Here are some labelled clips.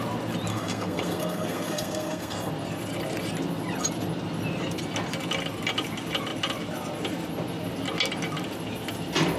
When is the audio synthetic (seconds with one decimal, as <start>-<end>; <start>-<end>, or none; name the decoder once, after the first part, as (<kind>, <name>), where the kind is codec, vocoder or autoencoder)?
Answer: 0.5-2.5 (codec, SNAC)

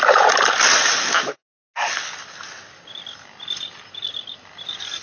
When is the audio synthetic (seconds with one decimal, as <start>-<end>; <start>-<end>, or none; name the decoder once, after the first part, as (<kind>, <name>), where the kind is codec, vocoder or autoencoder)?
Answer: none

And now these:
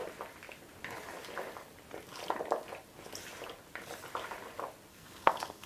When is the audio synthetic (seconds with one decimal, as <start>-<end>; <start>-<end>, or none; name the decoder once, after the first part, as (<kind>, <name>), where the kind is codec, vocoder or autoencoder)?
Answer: 4.9-5.7 (codec, SNAC)

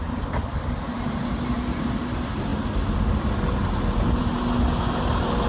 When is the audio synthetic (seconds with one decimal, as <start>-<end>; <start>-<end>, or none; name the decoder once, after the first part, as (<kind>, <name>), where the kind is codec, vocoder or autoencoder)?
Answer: none